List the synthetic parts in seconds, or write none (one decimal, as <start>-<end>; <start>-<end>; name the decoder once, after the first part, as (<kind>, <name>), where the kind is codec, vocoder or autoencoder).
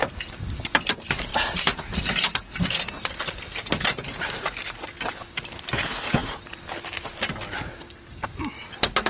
none